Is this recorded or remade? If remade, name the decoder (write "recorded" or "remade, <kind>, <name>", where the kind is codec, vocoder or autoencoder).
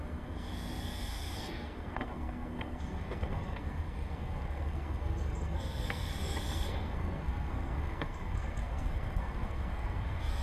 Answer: remade, codec, SNAC